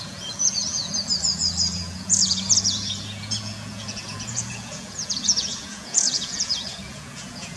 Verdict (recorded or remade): remade